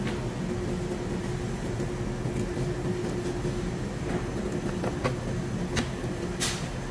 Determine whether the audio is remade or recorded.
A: recorded